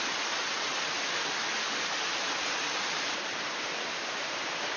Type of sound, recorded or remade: recorded